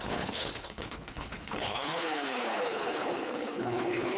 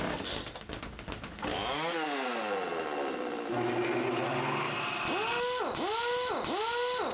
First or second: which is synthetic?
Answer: first